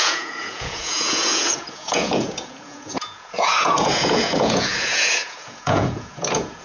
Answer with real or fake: fake